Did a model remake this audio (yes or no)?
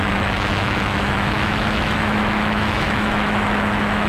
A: yes